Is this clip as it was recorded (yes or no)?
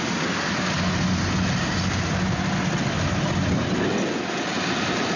yes